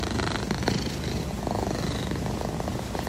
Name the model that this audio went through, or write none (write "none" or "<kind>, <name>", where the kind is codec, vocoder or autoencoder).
none